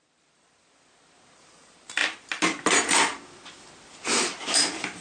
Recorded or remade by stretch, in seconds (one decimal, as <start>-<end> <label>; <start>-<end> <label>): 0.0-2.0 remade; 2.0-4.4 recorded; 4.4-5.0 remade